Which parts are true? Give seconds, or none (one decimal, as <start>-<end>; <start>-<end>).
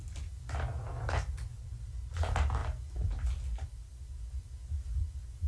0.0-1.5; 2.1-5.5